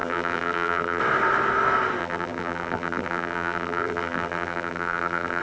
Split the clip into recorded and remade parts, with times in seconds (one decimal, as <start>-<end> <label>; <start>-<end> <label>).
0.0-1.0 remade; 1.0-2.0 recorded; 2.0-5.4 remade